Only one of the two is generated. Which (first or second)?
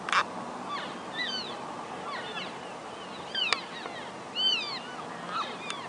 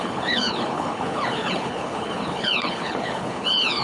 second